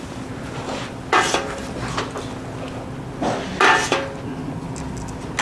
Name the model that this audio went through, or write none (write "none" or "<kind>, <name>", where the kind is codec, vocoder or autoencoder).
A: none